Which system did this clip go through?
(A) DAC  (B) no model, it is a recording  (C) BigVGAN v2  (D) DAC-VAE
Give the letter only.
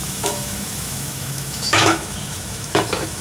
D